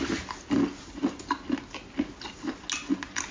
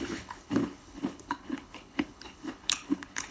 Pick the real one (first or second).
first